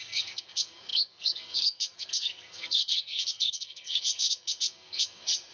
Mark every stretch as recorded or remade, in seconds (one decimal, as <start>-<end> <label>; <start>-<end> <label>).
0.0-5.5 remade